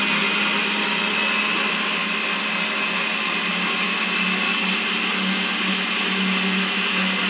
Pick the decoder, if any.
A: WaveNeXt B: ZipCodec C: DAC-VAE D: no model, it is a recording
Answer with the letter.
D